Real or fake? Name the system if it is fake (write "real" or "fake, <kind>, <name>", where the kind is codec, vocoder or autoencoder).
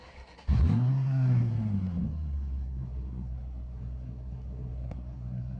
fake, codec, SNAC